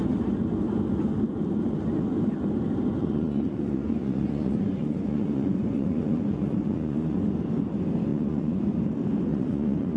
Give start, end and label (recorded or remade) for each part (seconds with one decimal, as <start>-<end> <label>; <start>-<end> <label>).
0.0-3.0 recorded; 3.0-7.2 remade; 7.2-8.1 recorded; 8.1-8.6 remade; 8.6-9.3 recorded; 9.3-10.0 remade